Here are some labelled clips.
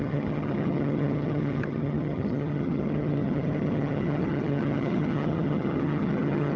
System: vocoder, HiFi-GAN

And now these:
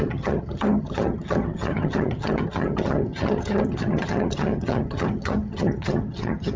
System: vocoder, HiFi-GAN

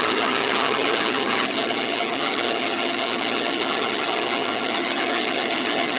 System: vocoder, HiFi-GAN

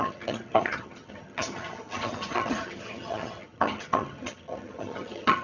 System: vocoder, HiFi-GAN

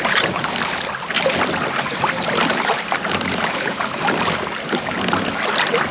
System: none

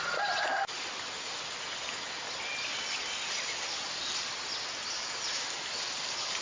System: none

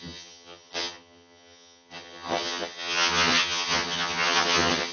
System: vocoder, HiFi-GAN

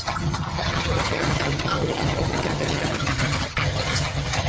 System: vocoder, HiFi-GAN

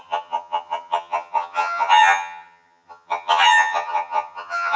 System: vocoder, HiFi-GAN